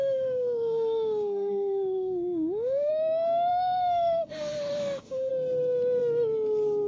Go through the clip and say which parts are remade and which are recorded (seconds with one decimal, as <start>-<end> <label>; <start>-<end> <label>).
0.0-2.9 remade; 2.9-3.5 recorded; 3.5-5.3 remade; 5.3-6.9 recorded